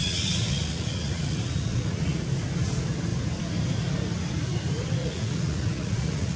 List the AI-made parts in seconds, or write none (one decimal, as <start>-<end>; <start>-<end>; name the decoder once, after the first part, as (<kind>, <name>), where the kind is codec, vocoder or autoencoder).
0.0-2.2 (vocoder, Vocos); 5.0-6.4